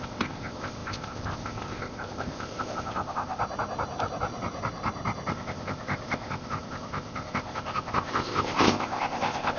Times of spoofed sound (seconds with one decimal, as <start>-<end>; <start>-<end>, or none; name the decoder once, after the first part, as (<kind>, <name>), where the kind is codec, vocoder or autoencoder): 0.0-3.4 (codec, ZipCodec); 5.3-9.6